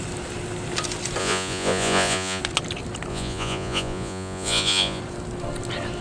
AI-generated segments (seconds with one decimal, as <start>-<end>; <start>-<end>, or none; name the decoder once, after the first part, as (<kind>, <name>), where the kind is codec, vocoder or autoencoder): 1.2-2.4 (vocoder, Vocos); 3.1-5.0